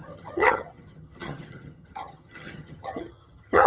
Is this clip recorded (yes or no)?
no